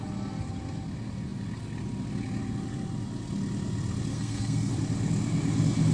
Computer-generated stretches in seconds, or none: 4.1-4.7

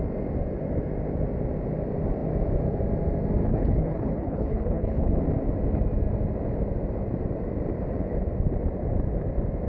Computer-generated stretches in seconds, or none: 3.5-5.2

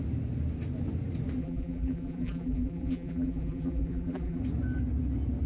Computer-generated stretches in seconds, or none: 1.4-4.4